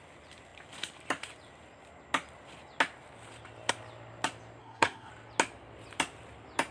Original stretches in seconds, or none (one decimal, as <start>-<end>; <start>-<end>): 0.0-4.6; 5.1-6.7